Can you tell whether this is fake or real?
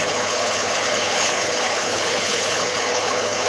fake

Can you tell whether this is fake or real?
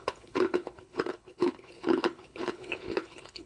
fake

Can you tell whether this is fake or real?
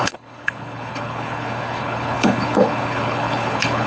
fake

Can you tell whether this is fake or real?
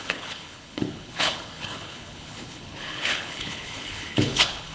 fake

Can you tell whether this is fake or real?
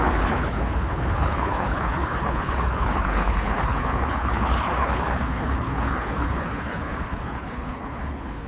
fake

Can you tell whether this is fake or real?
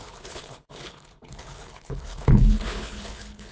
fake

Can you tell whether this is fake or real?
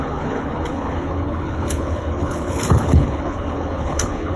fake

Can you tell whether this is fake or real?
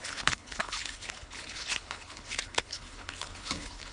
fake